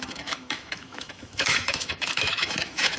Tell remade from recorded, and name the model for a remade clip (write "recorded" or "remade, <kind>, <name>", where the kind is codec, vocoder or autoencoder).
remade, autoencoder, DAC-VAE